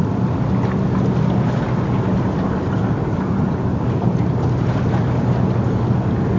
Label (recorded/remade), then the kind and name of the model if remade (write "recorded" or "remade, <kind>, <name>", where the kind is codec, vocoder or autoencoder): recorded